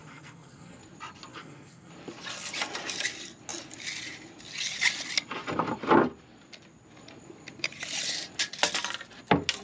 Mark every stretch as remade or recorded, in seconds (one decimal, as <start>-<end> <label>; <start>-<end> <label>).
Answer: 0.0-0.8 remade; 0.8-1.3 recorded; 1.3-1.9 remade; 1.9-9.6 recorded

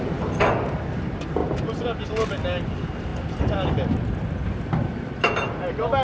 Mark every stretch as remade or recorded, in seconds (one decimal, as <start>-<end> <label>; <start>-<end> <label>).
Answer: 0.0-6.0 recorded

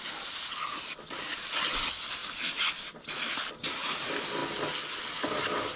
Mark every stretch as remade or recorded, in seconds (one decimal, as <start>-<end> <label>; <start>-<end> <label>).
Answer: 0.0-5.8 recorded

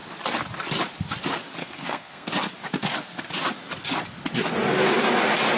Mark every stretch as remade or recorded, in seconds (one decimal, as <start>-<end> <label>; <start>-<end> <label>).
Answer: 0.0-1.6 recorded; 1.6-2.3 remade; 2.3-5.6 recorded